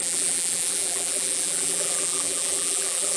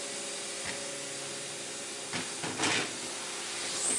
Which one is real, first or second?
second